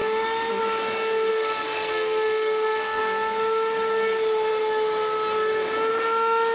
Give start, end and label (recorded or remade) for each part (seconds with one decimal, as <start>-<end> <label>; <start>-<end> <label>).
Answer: 0.0-1.3 recorded; 1.3-3.0 remade; 3.0-6.5 recorded